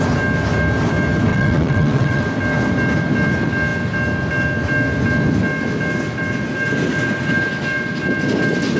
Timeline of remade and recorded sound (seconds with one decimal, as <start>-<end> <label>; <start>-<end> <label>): 0.0-1.3 recorded; 1.3-2.2 remade; 2.2-8.8 recorded